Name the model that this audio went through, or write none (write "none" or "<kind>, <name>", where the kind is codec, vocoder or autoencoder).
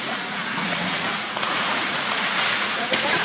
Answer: vocoder, Vocos